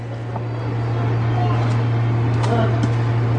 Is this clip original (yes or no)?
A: yes